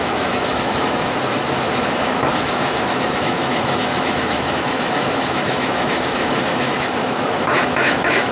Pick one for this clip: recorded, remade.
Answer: remade